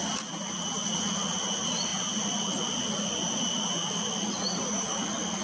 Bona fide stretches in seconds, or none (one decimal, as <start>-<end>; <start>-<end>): 0.0-5.4

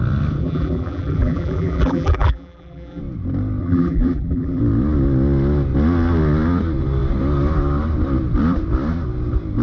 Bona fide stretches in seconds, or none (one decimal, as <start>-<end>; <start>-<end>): 0.0-0.4; 3.0-3.6; 4.6-9.6

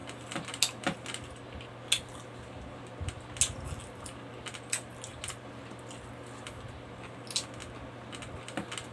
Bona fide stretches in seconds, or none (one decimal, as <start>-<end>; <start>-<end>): 0.0-8.9